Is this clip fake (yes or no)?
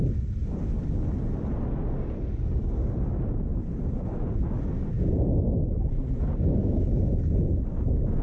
no